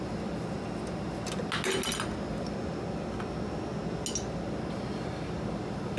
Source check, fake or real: real